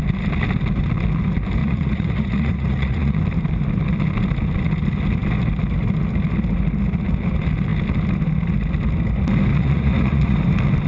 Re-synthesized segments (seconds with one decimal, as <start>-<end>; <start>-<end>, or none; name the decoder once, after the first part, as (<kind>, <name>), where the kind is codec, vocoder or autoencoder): 1.6-3.2 (vocoder, Vocos); 9.5-10.4